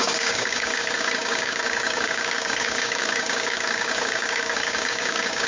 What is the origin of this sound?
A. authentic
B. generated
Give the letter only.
B